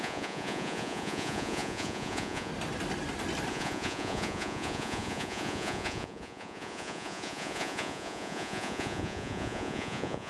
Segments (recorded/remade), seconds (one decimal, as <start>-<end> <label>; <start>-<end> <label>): 0.0-2.5 remade; 2.5-3.5 recorded; 3.5-10.3 remade

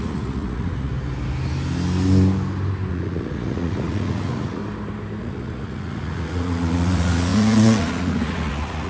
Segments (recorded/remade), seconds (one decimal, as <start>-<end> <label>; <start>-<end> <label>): 0.0-0.9 remade; 0.9-2.9 recorded; 2.9-4.6 remade; 4.6-5.2 recorded; 5.2-8.9 remade

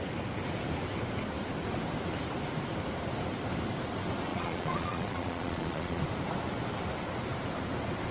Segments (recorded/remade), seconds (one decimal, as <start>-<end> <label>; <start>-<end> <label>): 0.0-4.3 recorded; 4.3-6.0 remade; 6.0-8.1 recorded